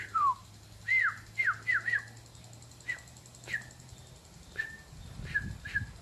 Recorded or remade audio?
recorded